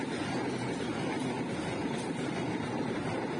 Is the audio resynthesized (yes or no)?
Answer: no